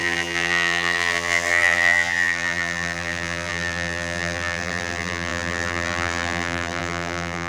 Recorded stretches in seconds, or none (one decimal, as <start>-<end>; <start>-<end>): none